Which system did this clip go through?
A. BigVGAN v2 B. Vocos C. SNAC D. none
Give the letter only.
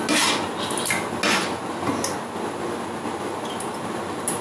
D